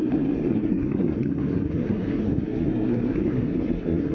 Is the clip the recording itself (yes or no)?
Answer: no